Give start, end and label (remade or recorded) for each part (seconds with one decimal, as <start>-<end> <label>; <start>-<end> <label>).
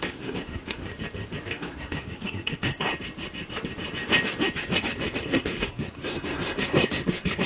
0.0-0.9 remade; 0.9-1.5 recorded; 1.5-2.9 remade; 2.9-5.2 recorded; 5.2-7.5 remade